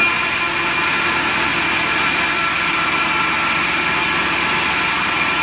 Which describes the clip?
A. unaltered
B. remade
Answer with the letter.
A